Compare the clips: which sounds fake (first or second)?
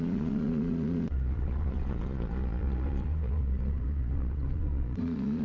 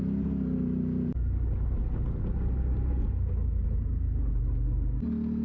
first